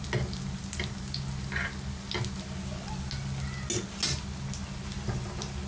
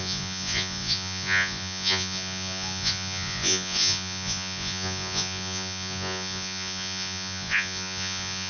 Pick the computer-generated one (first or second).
second